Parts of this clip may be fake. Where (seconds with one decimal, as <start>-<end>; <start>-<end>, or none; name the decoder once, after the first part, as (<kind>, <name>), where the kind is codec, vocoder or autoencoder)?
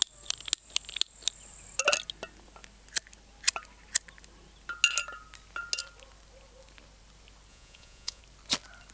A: 7.5-8.2 (vocoder, Vocos)